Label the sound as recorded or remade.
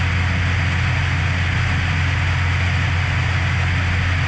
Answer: recorded